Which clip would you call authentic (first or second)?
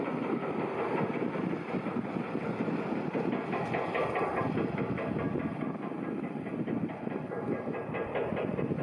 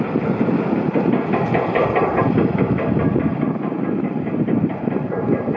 first